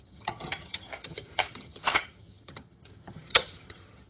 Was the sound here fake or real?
fake